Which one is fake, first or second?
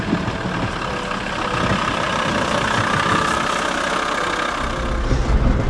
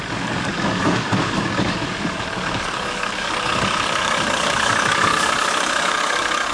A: second